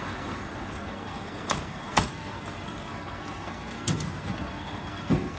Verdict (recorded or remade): remade